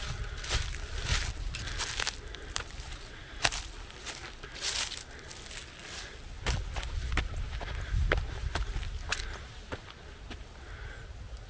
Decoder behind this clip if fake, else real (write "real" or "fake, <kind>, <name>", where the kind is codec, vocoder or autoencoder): real